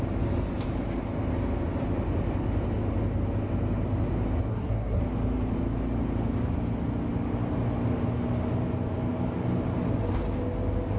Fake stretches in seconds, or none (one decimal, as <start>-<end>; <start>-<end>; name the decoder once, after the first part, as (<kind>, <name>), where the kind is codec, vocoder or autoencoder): 4.5-5.0 (codec, SNAC)